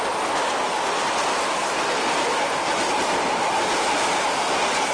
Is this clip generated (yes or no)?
no